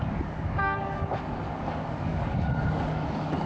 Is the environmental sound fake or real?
fake